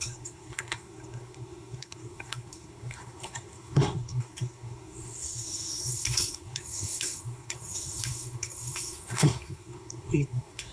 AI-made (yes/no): yes